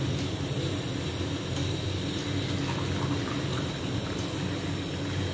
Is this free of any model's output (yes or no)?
yes